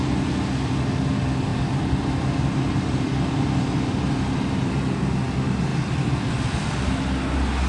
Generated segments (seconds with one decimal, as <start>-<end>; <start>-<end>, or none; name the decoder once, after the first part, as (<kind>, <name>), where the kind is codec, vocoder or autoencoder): 1.5-4.0 (vocoder, BigVGAN v2); 5.7-6.3